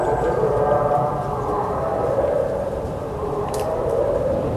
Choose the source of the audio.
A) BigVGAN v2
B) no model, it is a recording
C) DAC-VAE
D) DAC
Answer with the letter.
A